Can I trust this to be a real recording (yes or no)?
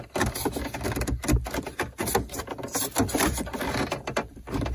yes